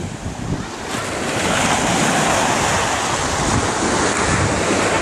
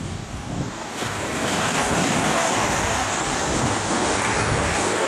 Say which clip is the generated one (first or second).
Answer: second